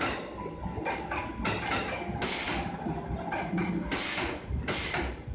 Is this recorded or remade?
recorded